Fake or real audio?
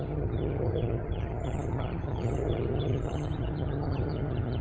fake